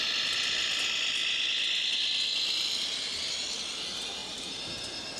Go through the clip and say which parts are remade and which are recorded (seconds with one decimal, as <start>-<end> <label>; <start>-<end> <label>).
0.0-4.2 recorded; 4.2-4.7 remade; 4.7-5.2 recorded